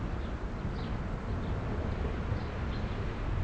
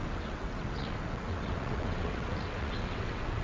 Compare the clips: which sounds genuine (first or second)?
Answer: first